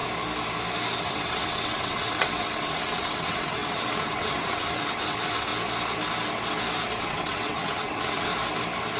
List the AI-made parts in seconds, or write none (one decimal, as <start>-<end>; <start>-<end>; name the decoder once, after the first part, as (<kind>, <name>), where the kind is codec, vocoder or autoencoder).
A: 1.0-5.5 (vocoder, WaveNeXt); 7.0-8.3

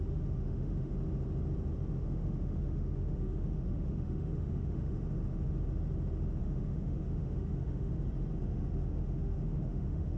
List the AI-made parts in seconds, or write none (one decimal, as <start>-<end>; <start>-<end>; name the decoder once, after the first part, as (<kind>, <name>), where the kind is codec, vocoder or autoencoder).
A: 0.0-0.9 (autoencoder, DAC-VAE); 2.0-5.0; 6.4-7.9; 8.4-10.2